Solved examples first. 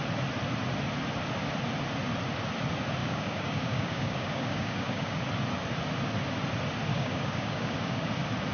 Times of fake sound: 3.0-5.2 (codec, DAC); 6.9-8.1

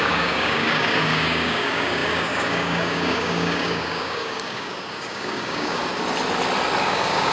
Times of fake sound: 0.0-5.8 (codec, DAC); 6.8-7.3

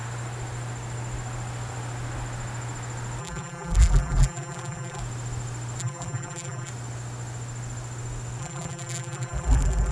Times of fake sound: 3.2-5.0 (vocoder, BigVGAN v2); 5.8-6.7; 8.4-9.9

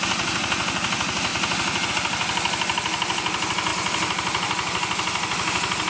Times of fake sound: none

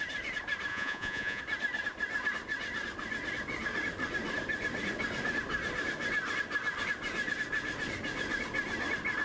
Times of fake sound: 0.7-1.4 (vocoder, Vocos)

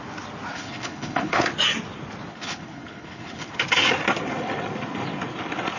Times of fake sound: 0.5-1.5 (codec, HILCodec); 2.3-3.5